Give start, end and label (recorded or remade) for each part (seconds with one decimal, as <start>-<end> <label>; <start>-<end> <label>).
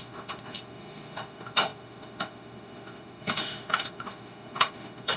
0.0-5.2 remade